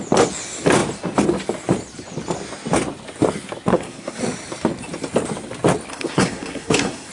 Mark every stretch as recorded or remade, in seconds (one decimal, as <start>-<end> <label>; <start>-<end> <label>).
0.0-3.7 recorded; 3.7-4.2 remade; 4.2-5.9 recorded; 5.9-7.1 remade